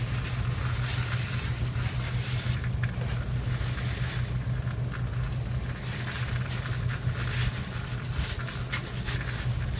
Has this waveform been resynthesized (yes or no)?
no